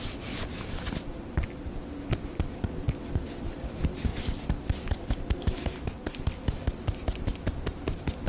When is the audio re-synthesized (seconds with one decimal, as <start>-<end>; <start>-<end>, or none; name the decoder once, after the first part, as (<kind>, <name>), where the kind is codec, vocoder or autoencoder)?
none